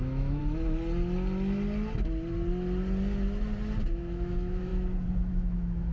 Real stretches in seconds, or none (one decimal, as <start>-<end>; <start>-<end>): 0.4-3.9; 4.7-5.3